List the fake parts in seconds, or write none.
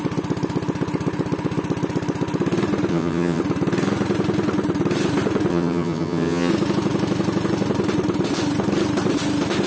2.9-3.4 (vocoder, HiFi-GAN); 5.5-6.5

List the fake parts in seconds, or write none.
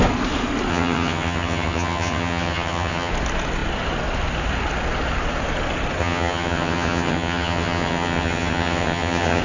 0.7-3.1 (vocoder, HiFi-GAN); 6.0-9.4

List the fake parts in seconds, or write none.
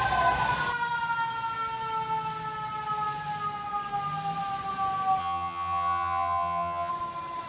5.2-6.9 (vocoder, HiFi-GAN)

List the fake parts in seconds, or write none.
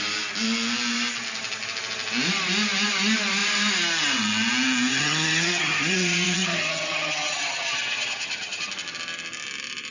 4.9-8.7 (vocoder, HiFi-GAN)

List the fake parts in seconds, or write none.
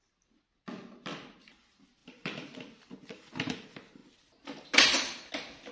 none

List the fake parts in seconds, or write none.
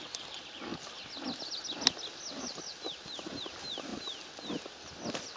none